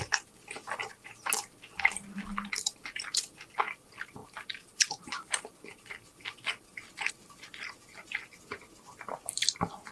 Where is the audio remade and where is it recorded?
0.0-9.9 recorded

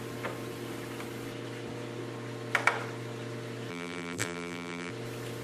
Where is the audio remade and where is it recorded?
0.0-3.7 recorded; 3.7-4.9 remade; 4.9-5.4 recorded